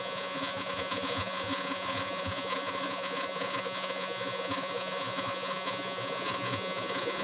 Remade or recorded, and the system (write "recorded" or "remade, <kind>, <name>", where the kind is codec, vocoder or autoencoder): remade, vocoder, Vocos